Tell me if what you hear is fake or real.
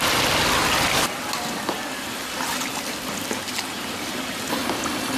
real